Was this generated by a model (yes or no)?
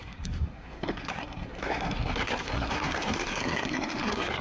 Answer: yes